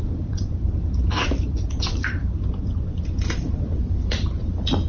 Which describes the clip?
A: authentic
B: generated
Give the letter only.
B